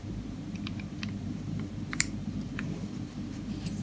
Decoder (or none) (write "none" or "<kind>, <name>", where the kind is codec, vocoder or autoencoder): vocoder, BigVGAN v2